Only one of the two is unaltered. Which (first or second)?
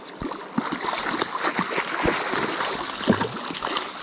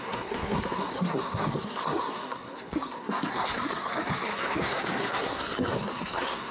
first